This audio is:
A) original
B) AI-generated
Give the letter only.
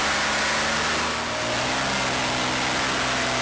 A